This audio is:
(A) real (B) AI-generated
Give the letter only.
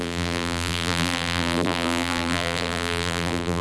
B